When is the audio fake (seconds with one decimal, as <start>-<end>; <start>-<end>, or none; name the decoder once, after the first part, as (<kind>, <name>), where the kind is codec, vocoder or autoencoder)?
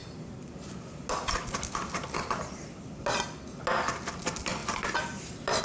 none